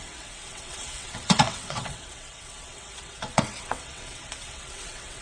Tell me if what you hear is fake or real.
fake